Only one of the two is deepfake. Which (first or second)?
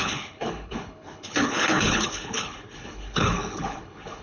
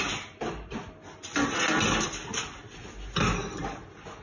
first